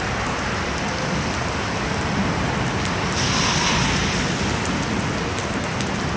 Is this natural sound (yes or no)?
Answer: yes